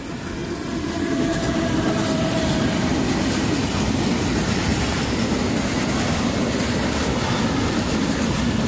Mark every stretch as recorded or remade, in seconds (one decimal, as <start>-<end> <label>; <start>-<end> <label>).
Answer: 0.0-4.7 recorded; 4.7-5.5 remade; 5.5-8.7 recorded